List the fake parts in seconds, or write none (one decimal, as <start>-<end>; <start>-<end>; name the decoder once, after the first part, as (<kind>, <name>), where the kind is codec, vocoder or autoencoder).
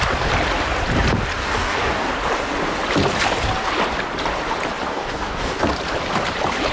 1.4-2.1 (codec, DAC); 4.9-5.6